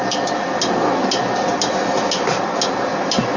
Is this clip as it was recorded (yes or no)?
yes